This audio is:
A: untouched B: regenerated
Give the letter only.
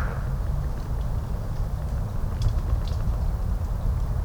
A